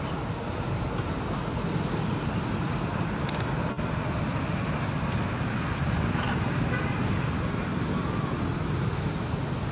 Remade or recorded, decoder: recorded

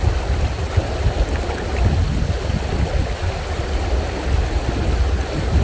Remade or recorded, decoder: recorded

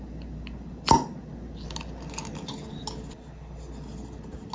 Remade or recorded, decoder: recorded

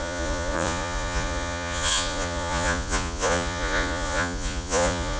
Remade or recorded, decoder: remade, vocoder, Vocos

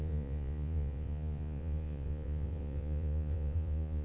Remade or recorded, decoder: remade, vocoder, Vocos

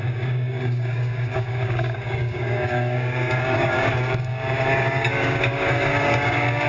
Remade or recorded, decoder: remade, codec, DAC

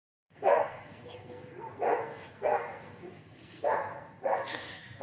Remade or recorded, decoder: remade, codec, SNAC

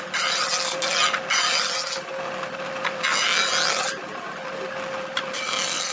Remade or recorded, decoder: recorded